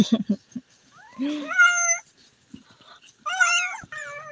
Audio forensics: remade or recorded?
recorded